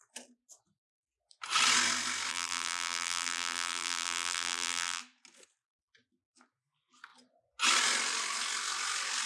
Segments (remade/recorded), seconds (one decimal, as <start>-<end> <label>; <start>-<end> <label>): 0.0-2.3 recorded; 2.3-5.0 remade; 5.0-9.3 recorded